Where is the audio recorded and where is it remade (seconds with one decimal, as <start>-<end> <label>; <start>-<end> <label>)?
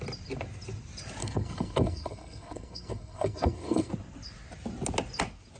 0.0-1.2 recorded; 1.2-3.9 remade; 3.9-5.6 recorded